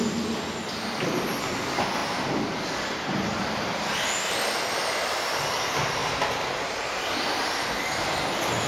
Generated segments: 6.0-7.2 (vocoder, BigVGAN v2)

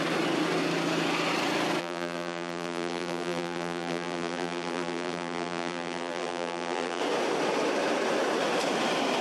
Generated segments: 1.8-7.0 (vocoder, BigVGAN v2)

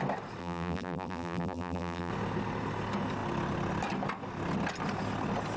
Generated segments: 0.4-2.1 (vocoder, BigVGAN v2)